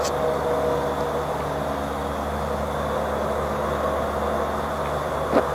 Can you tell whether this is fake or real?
real